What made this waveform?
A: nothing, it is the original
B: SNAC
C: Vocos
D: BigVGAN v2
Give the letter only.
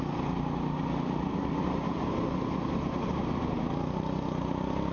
A